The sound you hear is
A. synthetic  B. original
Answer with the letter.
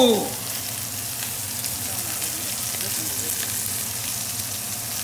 B